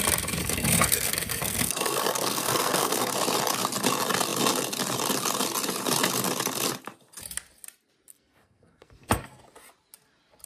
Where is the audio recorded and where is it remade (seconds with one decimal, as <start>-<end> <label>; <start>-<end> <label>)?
0.0-0.4 recorded; 0.4-3.1 remade; 3.1-8.1 recorded; 8.1-9.4 remade; 9.4-10.5 recorded

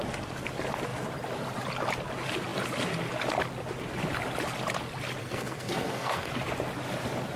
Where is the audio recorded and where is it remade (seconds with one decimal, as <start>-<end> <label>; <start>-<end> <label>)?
0.0-5.2 recorded; 5.2-6.3 remade; 6.3-7.4 recorded

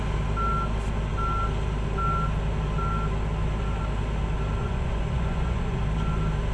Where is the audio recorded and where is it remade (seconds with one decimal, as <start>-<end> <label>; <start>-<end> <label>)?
0.0-4.6 recorded; 4.6-5.8 remade; 5.8-6.5 recorded

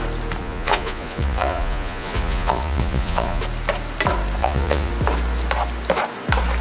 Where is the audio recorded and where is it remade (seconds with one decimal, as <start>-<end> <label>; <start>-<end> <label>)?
0.0-0.4 recorded; 0.4-3.4 remade; 3.4-4.4 recorded; 4.4-4.9 remade; 4.9-6.6 recorded

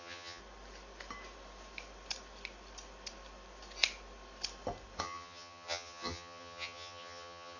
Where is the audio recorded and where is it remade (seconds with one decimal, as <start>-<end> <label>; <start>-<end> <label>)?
0.0-0.4 remade; 0.4-5.0 recorded; 5.0-7.6 remade

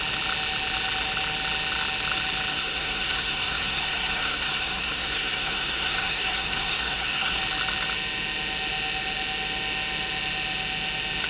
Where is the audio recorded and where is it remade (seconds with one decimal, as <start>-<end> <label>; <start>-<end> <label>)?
0.0-2.5 recorded; 2.5-7.4 remade; 7.4-11.3 recorded

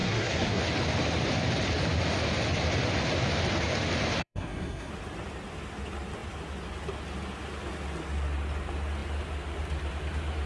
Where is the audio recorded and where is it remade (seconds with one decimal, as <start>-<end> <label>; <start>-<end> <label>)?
0.0-0.6 remade; 0.6-4.2 recorded; 4.2-4.9 remade; 4.9-10.5 recorded

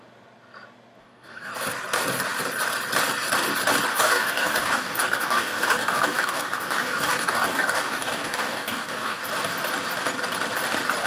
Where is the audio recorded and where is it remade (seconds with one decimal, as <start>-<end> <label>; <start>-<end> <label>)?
0.0-1.0 recorded; 1.0-1.5 remade; 1.5-3.9 recorded; 3.9-9.2 remade; 9.2-11.1 recorded